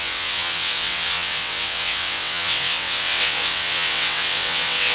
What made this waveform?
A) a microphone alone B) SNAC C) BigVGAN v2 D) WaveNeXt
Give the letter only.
D